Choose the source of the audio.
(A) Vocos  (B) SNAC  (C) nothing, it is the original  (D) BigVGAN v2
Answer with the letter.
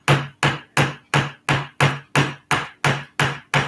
C